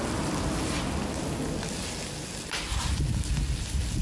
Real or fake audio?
real